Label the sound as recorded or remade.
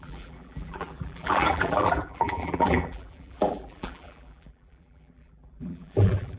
remade